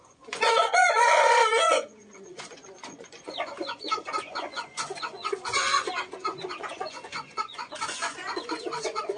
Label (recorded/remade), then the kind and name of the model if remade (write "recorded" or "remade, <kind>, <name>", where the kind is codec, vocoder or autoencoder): remade, vocoder, Vocos